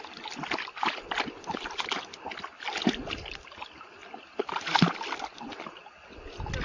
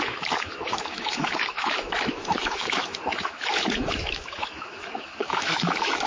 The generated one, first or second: second